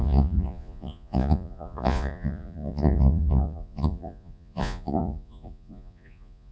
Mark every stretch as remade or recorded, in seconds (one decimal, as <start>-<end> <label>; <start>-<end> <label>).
0.0-6.5 remade